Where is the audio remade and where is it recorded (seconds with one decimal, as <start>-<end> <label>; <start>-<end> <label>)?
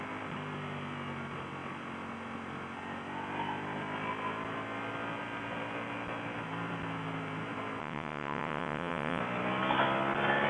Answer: 0.0-7.8 recorded; 7.8-9.2 remade; 9.2-10.5 recorded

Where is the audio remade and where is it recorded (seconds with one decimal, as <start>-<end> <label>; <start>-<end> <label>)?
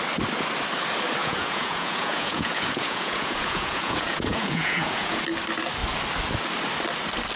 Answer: 0.0-1.2 recorded; 1.2-5.2 remade; 5.2-7.4 recorded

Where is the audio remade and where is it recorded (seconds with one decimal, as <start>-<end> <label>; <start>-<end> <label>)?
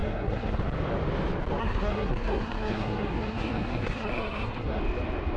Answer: 0.0-0.6 remade; 0.6-1.6 recorded; 1.6-4.8 remade; 4.8-5.4 recorded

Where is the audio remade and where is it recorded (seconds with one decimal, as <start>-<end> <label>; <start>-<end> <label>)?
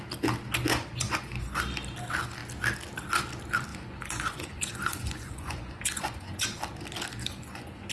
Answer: 0.0-0.7 recorded; 0.7-1.6 remade; 1.6-3.7 recorded; 3.7-6.6 remade; 6.6-7.2 recorded; 7.2-7.9 remade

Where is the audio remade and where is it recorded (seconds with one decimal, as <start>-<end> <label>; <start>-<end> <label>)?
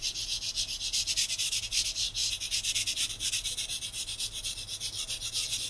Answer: 0.0-5.7 recorded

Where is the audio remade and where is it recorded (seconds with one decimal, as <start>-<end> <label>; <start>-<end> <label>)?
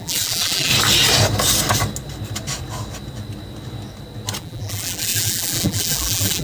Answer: 0.0-0.7 remade; 0.7-4.4 recorded; 4.4-6.4 remade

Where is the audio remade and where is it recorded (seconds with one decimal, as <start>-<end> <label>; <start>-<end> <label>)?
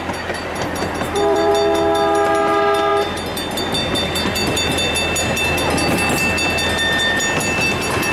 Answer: 0.0-0.4 recorded; 0.4-1.5 remade; 1.5-4.4 recorded; 4.4-4.9 remade; 4.9-8.1 recorded